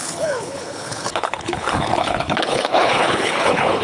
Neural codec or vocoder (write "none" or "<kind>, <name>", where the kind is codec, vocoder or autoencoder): codec, HILCodec